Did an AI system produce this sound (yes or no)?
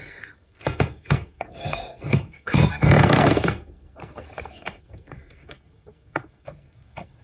yes